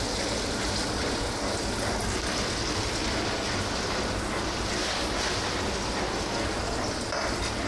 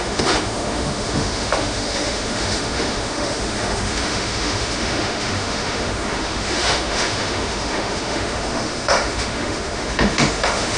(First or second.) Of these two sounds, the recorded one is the first